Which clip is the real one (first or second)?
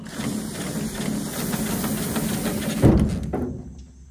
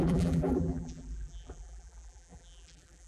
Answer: first